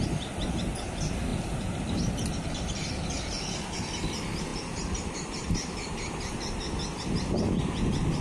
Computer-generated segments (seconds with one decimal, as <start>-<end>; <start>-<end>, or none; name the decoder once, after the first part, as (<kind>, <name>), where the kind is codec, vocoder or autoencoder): 1.3-2.9 (vocoder, BigVGAN v2); 4.5-5.9